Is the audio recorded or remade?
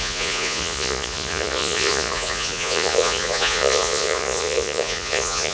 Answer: remade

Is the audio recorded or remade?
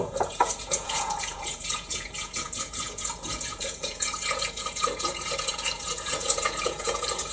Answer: remade